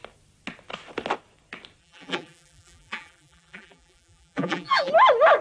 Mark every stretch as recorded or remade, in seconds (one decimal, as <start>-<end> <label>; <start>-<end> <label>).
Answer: 0.0-1.8 recorded; 1.8-4.9 remade; 4.9-5.4 recorded